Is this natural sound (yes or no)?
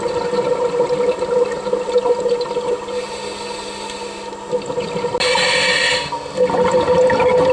yes